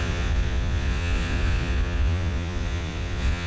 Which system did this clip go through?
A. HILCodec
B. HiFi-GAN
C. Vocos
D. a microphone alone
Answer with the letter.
C